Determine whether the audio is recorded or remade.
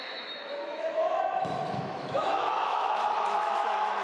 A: remade